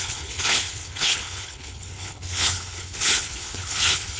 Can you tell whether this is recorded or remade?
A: remade